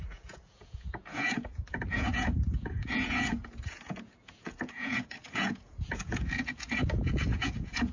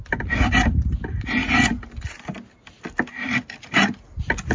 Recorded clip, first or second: second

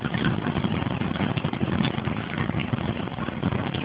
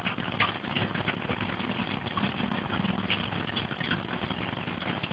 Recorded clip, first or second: second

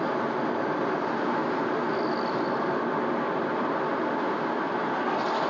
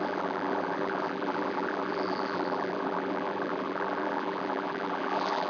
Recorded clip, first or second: first